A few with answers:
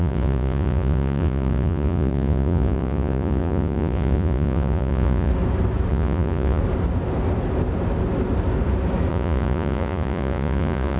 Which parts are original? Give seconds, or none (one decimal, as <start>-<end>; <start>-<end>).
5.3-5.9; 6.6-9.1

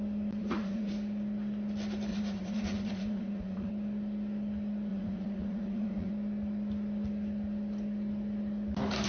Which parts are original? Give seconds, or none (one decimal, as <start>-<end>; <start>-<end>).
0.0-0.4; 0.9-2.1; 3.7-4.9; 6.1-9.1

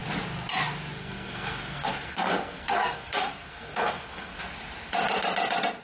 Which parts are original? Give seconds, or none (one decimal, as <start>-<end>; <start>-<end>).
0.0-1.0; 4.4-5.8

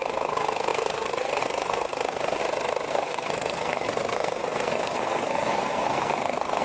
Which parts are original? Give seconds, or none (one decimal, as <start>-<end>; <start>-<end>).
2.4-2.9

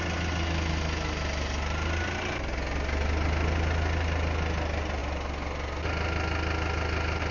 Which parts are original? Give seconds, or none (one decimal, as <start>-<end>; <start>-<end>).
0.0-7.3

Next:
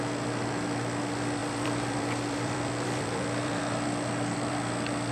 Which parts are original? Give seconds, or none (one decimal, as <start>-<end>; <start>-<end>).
0.0-1.4; 4.5-5.1

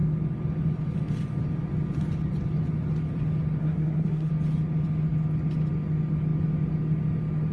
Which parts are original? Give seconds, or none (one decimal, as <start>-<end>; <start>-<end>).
0.0-3.6; 4.3-7.5

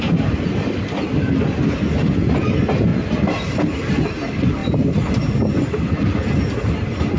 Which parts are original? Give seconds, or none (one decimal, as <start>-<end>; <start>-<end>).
0.0-7.2